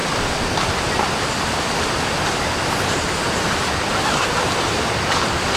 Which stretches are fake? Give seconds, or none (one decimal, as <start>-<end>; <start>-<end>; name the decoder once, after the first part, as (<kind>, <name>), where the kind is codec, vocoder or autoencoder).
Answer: none